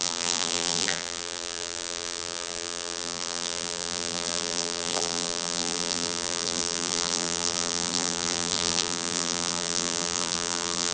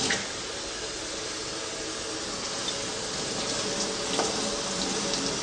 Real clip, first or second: second